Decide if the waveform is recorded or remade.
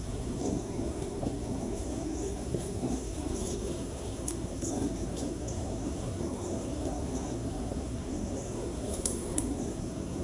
remade